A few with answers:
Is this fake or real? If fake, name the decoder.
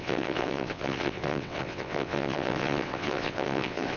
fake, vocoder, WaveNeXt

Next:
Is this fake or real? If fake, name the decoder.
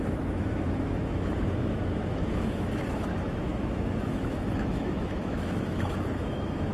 fake, autoencoder, DAC-VAE